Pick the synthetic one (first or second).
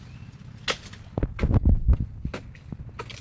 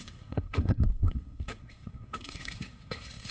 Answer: second